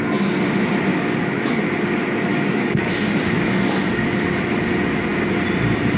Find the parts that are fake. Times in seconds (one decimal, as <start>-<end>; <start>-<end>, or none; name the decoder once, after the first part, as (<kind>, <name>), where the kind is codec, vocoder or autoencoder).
0.9-1.6 (codec, DAC); 2.3-4.4